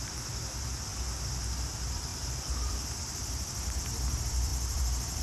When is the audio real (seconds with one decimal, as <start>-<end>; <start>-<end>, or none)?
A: 0.9-1.7